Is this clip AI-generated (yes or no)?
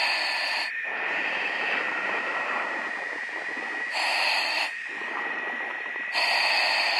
no